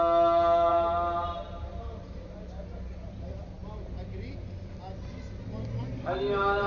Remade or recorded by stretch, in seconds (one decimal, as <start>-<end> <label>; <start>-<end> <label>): 0.0-0.7 recorded; 0.7-2.3 remade; 2.3-6.7 recorded